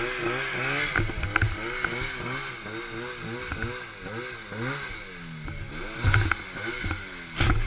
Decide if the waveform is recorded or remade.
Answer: recorded